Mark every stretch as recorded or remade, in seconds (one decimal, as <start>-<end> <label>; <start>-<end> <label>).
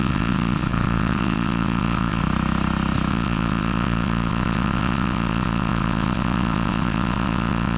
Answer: 0.0-2.2 remade; 2.2-3.1 recorded; 3.1-7.8 remade